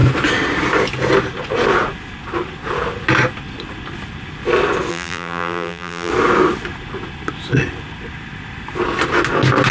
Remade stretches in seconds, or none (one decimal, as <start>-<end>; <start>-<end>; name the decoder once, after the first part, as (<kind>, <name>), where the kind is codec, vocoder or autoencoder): 4.9-6.1 (vocoder, BigVGAN v2)